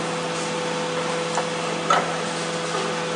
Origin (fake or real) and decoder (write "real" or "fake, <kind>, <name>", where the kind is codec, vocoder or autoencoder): real